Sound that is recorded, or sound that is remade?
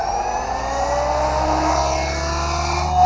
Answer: recorded